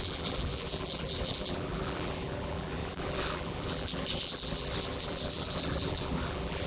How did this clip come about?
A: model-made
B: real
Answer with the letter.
A